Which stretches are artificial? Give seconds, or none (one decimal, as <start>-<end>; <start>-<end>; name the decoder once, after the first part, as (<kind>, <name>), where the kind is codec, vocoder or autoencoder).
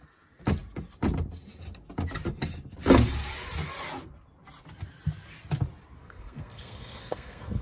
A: 6.0-7.6 (codec, SNAC)